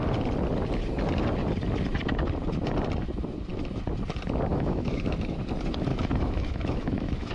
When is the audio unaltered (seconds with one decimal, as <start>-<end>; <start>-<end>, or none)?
0.0-4.5; 5.4-5.9